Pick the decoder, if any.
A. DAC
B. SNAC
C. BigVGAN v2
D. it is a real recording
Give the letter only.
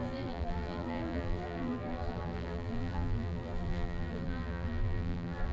C